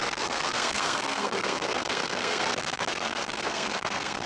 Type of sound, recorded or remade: remade